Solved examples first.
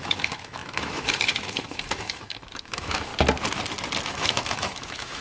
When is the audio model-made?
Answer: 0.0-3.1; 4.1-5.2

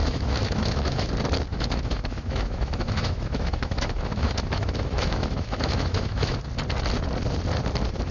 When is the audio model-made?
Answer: 0.0-1.1; 1.5-6.4

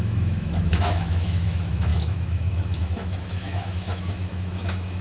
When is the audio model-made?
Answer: 0.0-5.0